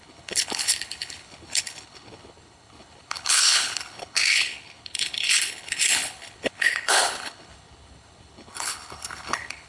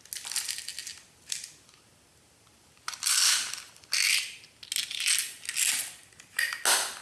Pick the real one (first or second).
second